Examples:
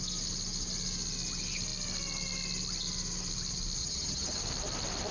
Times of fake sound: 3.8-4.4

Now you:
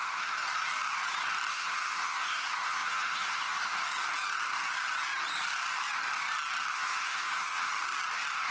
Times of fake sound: 0.0-0.4; 1.5-3.8; 6.7-7.7

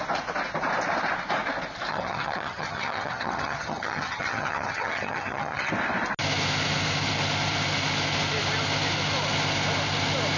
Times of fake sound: 1.9-5.7

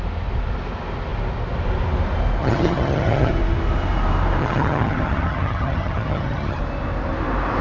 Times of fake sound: 2.4-3.3; 4.4-6.6

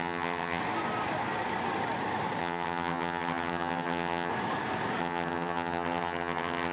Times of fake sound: 0.0-0.6; 2.4-4.3; 5.0-6.7